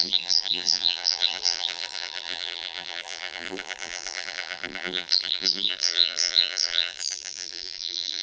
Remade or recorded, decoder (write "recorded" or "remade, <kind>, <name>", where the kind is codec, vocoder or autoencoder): remade, vocoder, BigVGAN v2